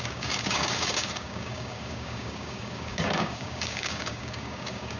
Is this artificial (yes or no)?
yes